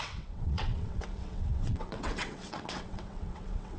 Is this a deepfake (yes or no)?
yes